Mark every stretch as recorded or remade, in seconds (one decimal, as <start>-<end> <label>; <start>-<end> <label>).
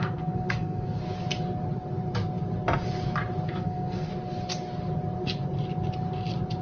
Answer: 0.0-1.0 remade; 1.0-3.5 recorded; 3.5-4.1 remade; 4.1-6.6 recorded